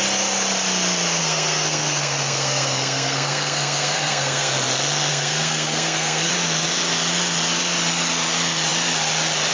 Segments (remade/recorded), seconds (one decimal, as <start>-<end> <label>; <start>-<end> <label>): 0.0-1.2 recorded; 1.2-4.5 remade; 4.5-5.1 recorded; 5.1-6.3 remade; 6.3-9.5 recorded